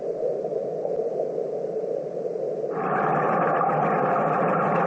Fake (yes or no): no